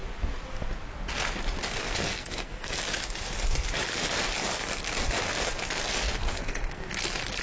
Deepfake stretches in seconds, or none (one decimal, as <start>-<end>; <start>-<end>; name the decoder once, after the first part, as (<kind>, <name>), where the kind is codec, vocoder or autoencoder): 1.8-2.8 (codec, SNAC); 6.3-6.9